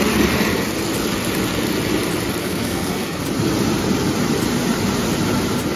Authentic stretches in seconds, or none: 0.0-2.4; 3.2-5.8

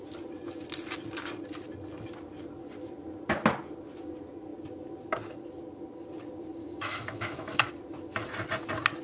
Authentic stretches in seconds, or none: 0.0-6.6; 7.7-9.0

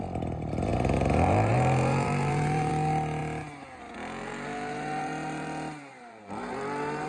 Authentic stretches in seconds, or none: 0.0-0.7; 2.7-4.2

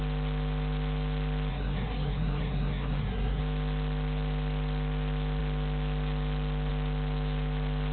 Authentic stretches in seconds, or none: 0.0-1.5; 3.4-7.9

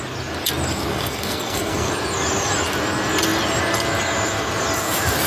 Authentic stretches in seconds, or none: 0.0-0.9; 1.9-5.3

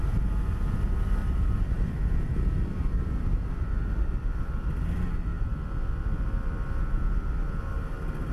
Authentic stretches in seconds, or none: 0.0-1.2; 4.7-5.3; 7.6-8.3

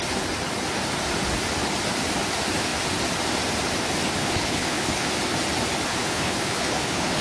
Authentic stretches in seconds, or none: 0.0-4.2; 5.1-6.0